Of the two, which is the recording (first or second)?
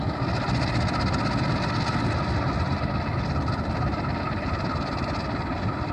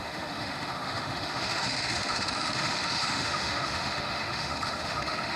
first